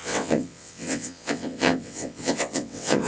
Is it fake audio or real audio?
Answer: fake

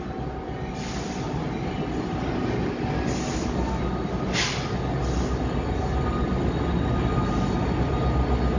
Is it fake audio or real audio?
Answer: real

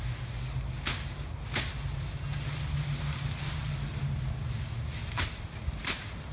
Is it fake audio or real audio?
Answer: real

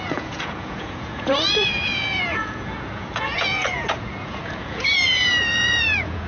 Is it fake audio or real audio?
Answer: fake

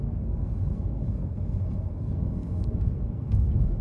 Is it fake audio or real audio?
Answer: fake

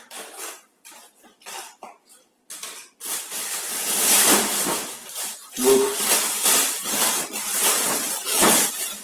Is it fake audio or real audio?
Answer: fake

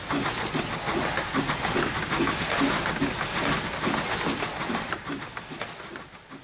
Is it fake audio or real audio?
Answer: real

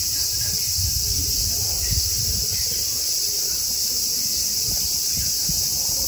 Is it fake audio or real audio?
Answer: fake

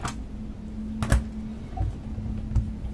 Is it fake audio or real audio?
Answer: real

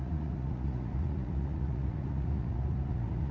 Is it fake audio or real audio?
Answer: fake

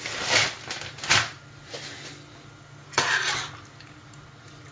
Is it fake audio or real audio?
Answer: real